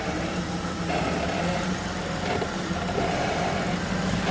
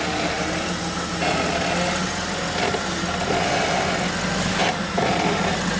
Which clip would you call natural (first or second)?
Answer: second